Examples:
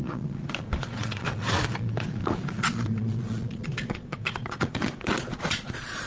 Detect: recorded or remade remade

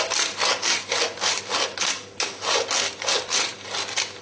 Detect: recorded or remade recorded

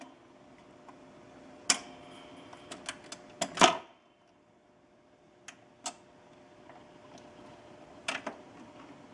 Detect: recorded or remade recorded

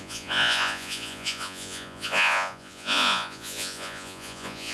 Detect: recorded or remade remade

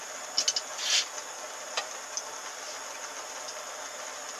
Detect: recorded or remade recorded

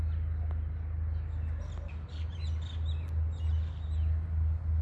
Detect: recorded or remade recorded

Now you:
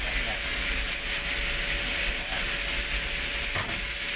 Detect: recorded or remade recorded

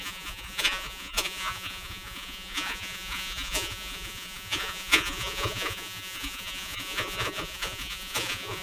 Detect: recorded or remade remade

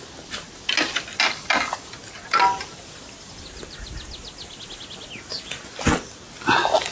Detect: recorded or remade recorded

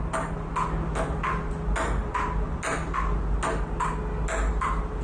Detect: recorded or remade recorded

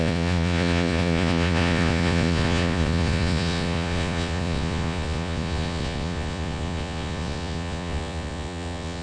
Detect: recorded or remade remade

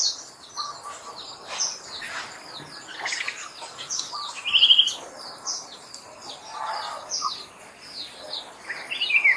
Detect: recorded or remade recorded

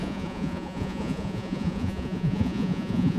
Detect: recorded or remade remade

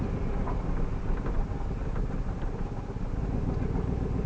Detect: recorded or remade recorded